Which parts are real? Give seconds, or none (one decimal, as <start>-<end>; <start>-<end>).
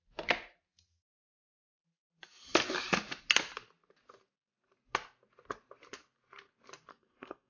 0.0-6.9